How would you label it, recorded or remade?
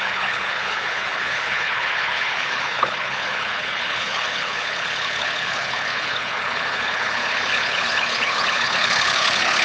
remade